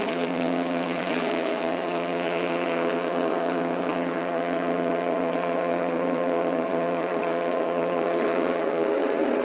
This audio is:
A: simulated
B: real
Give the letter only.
A